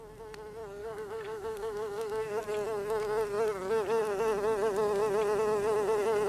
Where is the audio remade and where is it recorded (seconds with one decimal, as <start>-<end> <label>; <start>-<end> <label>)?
0.0-0.8 recorded; 0.8-2.4 remade; 2.4-6.3 recorded